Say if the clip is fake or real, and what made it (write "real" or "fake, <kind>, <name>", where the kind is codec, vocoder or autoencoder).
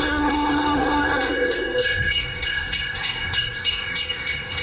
fake, codec, SNAC